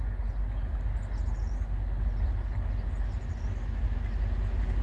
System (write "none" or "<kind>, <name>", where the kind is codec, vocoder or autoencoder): none